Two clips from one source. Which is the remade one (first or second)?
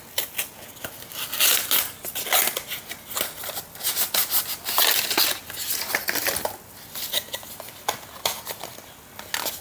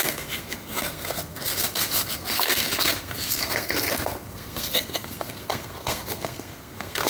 second